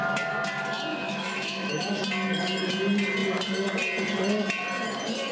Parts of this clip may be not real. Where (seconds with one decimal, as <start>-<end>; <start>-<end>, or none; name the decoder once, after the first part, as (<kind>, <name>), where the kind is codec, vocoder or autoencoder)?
0.9-2.0 (autoencoder, DAC-VAE)